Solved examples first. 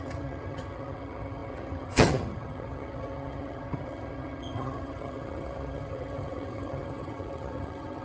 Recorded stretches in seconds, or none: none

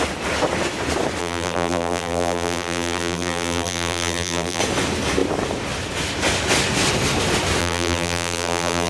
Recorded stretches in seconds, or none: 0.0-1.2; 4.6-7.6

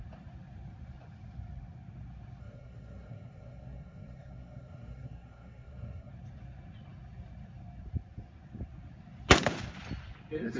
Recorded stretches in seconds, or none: 0.0-2.4; 6.1-10.6